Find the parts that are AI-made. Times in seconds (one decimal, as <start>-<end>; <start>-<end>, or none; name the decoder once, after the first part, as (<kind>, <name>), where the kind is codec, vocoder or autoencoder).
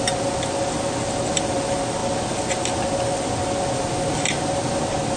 none